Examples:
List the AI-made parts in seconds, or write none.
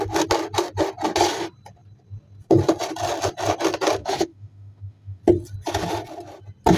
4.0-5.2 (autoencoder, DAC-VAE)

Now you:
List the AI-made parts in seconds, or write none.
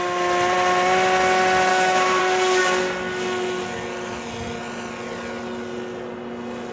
1.7-2.2 (autoencoder, DAC-VAE)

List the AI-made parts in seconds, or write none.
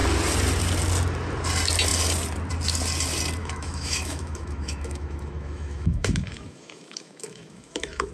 3.4-8.1 (autoencoder, DAC-VAE)